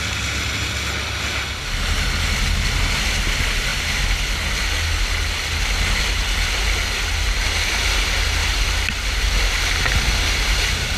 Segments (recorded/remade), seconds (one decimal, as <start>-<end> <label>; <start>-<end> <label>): 0.0-11.0 recorded